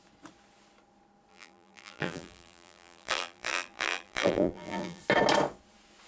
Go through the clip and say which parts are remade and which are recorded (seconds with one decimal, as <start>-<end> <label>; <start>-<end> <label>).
0.0-1.3 recorded; 1.3-5.0 remade; 5.0-6.1 recorded